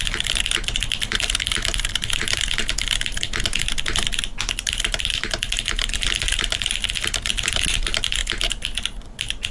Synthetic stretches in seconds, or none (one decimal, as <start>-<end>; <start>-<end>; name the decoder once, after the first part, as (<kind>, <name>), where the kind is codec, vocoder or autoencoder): none